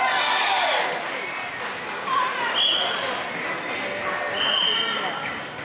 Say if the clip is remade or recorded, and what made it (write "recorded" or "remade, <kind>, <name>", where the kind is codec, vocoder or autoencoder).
recorded